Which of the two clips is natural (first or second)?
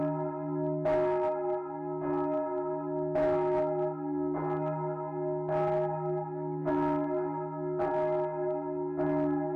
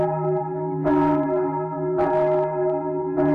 first